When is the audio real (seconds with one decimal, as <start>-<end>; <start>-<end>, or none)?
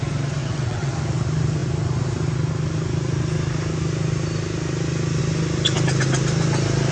0.0-0.4; 0.9-6.9